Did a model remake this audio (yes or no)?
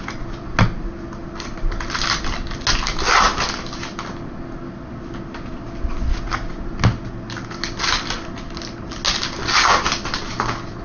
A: no